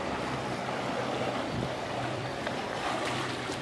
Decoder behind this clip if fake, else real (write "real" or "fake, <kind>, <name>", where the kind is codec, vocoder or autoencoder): fake, vocoder, BigVGAN v2